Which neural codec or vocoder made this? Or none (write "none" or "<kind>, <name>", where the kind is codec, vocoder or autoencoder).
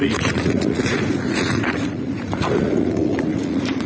vocoder, Vocos